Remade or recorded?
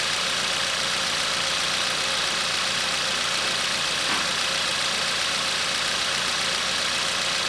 recorded